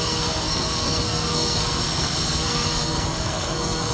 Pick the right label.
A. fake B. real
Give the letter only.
A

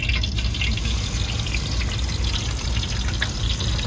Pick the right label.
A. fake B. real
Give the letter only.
B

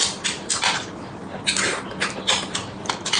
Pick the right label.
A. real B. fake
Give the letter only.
A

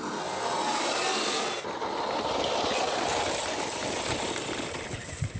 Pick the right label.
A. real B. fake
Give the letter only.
A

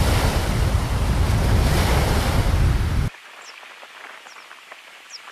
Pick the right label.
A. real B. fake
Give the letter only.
A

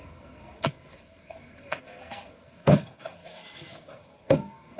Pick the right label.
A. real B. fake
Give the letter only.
B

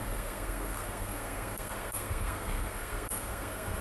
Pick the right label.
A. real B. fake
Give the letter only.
B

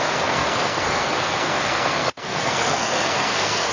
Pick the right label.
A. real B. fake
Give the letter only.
B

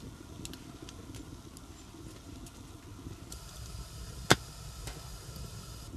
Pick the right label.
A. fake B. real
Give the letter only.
B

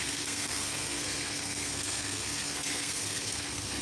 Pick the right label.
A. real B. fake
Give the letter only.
B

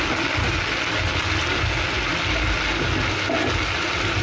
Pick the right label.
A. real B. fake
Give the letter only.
A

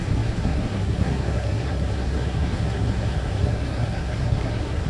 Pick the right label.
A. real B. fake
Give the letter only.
B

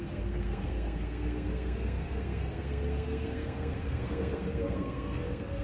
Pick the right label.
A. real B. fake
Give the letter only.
B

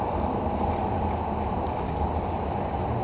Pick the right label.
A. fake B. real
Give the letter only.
B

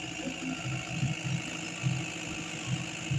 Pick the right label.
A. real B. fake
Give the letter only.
A